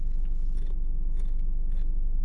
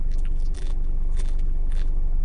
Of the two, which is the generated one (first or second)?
second